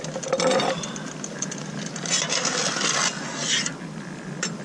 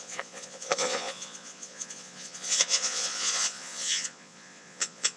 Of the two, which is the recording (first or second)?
first